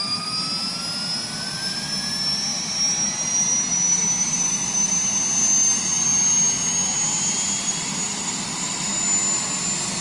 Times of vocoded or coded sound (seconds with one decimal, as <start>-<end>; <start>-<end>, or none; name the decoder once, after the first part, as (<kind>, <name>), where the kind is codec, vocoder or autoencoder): none